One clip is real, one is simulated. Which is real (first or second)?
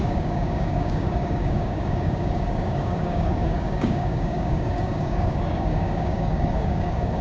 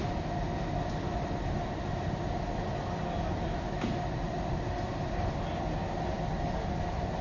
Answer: second